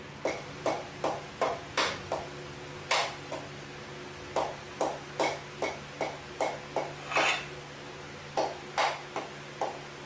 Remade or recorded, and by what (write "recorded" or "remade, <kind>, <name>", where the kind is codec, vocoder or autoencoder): recorded